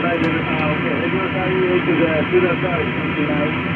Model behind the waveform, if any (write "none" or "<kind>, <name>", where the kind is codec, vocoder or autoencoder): none